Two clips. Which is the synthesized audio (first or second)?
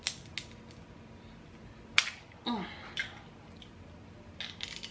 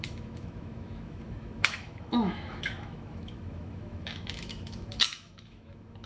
second